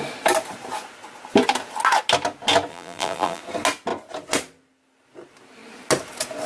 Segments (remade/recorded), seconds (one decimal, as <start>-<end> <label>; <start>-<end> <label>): 0.0-2.7 recorded; 2.7-3.4 remade; 3.4-6.5 recorded